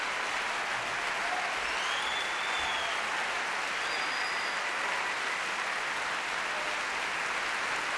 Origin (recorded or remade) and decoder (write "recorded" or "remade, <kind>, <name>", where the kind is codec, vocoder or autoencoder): recorded